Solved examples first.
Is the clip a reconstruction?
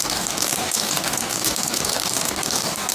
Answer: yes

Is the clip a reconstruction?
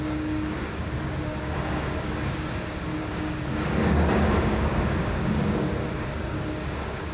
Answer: yes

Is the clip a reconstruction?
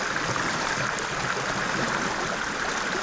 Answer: no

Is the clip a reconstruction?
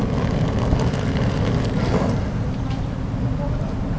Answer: no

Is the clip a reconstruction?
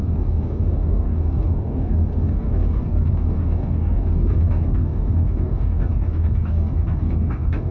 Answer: yes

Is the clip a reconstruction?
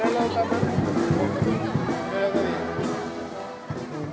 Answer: no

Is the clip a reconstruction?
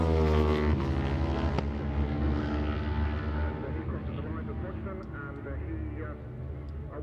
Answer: no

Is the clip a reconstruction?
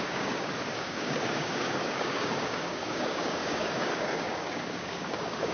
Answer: yes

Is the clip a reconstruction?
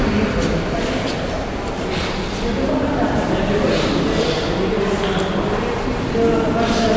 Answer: no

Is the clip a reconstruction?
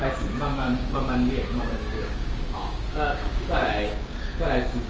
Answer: yes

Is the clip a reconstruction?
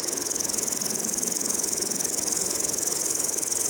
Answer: yes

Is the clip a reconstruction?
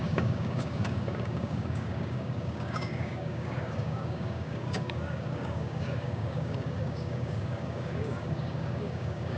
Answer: yes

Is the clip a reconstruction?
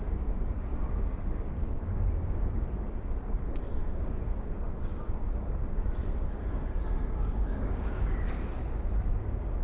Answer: yes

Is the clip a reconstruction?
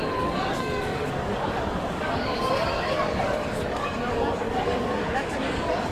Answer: yes